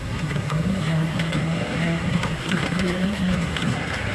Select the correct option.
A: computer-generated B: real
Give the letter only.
A